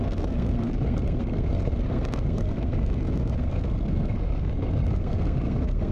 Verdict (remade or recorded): remade